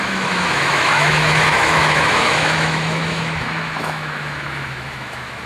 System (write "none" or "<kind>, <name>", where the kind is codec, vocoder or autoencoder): autoencoder, DAC-VAE